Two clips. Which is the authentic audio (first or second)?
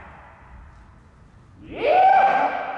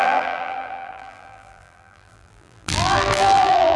first